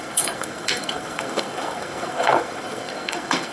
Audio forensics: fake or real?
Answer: fake